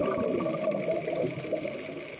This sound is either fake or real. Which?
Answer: real